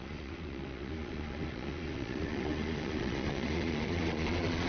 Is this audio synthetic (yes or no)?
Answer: yes